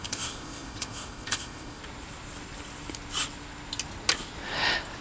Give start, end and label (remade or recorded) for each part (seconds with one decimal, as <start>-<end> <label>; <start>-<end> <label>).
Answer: 0.0-1.8 remade; 1.8-5.0 recorded